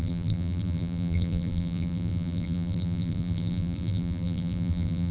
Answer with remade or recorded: remade